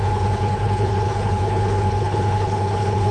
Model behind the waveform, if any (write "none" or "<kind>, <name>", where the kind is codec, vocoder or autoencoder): codec, HILCodec